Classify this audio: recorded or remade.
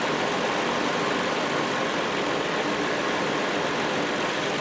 recorded